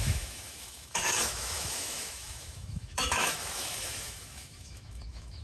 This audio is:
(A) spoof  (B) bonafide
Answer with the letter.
A